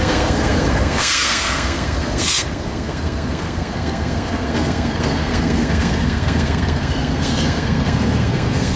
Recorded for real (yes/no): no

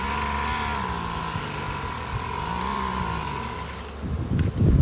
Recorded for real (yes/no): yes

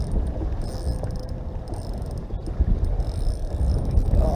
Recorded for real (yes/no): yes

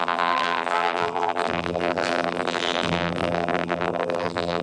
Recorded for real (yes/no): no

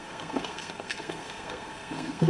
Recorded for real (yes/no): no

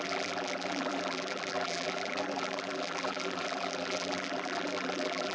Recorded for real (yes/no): no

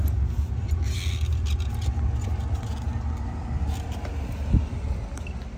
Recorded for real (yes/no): yes